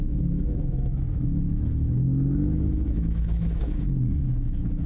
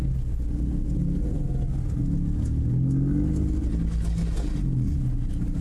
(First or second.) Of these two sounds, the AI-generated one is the first